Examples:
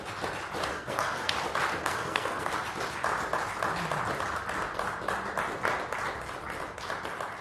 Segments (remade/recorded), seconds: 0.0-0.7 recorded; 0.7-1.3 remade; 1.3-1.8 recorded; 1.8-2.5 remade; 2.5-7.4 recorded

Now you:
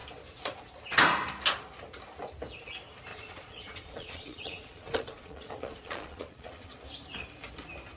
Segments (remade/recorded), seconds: 0.0-3.1 recorded; 3.1-6.8 remade; 6.8-8.0 recorded

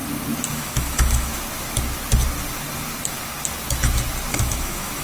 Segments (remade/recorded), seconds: 0.0-0.5 recorded; 0.5-1.3 remade; 1.3-4.3 recorded; 4.3-5.0 remade

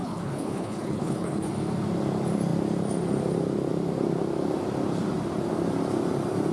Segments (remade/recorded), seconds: 0.0-1.5 remade; 1.5-6.5 recorded

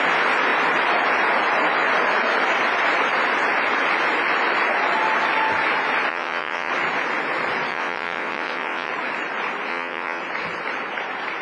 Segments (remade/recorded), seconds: 0.0-6.1 recorded; 6.1-6.7 remade; 6.7-7.7 recorded; 7.7-8.9 remade; 8.9-9.7 recorded; 9.7-10.2 remade; 10.2-11.4 recorded